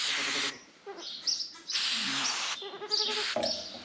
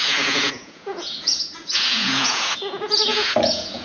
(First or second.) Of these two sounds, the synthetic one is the second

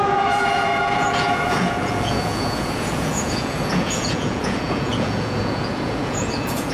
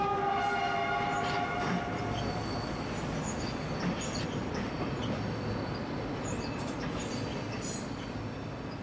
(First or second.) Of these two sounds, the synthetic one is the first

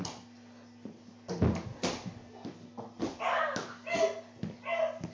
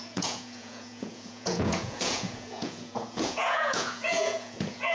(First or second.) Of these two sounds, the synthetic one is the second